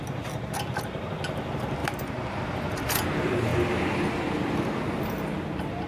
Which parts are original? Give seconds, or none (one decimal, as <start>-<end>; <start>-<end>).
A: 0.0-5.9